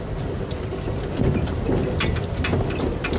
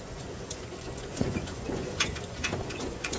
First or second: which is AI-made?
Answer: second